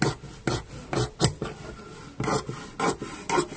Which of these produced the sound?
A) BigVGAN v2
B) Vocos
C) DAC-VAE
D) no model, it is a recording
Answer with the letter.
D